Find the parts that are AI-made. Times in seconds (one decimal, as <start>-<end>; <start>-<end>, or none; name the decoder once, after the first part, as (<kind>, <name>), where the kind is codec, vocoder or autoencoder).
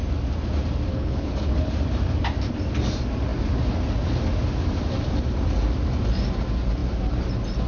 0.9-1.7 (codec, HILCodec)